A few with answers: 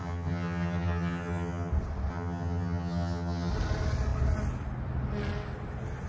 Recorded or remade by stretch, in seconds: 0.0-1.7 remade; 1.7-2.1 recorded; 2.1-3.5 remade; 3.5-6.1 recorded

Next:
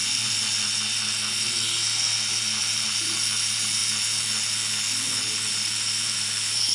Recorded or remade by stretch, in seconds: 0.0-2.6 recorded; 2.6-3.8 remade; 3.8-5.5 recorded; 5.5-6.7 remade